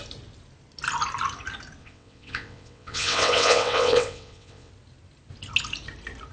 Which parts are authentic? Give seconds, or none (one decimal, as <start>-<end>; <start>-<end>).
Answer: 0.0-1.8; 4.7-6.3